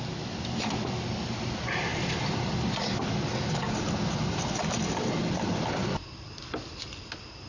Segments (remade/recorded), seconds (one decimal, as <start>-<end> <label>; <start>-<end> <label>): 0.0-7.5 recorded